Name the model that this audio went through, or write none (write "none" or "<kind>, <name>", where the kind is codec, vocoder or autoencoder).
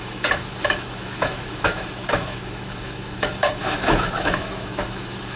autoencoder, DAC-VAE